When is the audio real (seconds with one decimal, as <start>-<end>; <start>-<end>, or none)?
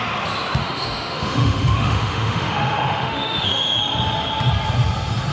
0.0-0.6; 3.8-5.3